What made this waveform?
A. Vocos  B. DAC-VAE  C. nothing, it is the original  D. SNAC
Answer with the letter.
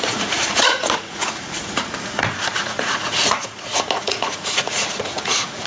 A